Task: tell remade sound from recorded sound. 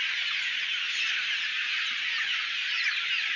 recorded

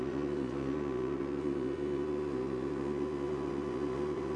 remade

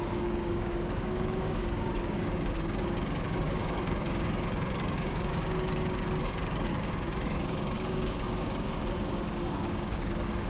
remade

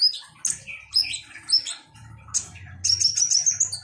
recorded